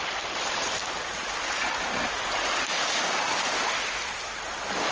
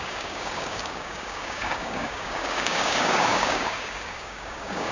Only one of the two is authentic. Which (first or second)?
first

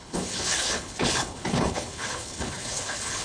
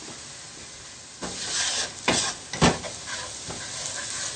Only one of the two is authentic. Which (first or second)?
second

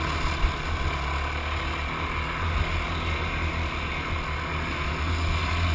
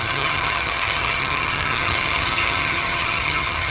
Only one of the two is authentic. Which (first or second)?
first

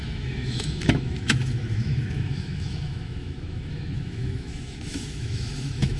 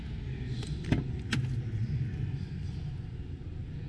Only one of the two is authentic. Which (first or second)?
second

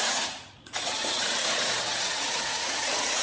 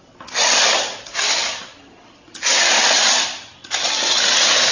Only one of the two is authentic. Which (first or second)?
second